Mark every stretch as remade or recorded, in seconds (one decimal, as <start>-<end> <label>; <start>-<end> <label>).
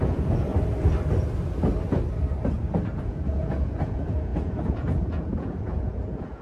0.0-0.5 remade; 0.5-3.0 recorded; 3.0-6.4 remade